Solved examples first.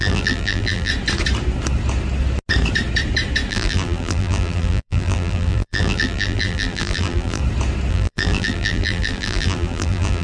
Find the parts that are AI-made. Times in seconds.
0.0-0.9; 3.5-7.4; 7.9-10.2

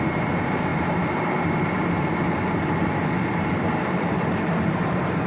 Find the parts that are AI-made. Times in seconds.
0.0-5.3

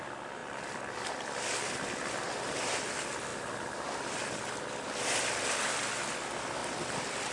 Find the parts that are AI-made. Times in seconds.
0.4-2.5; 3.3-5.7; 6.6-7.3

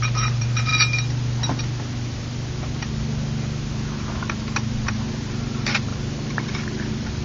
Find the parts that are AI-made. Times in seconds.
0.0-0.7; 4.9-7.2